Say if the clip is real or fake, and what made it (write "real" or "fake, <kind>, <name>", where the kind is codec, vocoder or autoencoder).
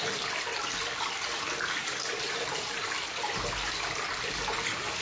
real